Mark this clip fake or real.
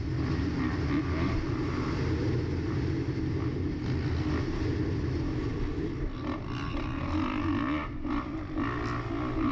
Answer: real